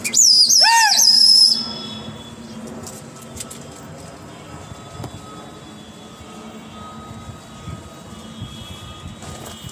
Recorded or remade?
recorded